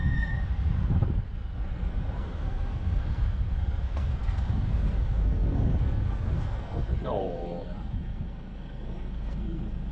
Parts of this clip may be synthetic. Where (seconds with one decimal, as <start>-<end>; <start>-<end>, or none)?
0.0-9.9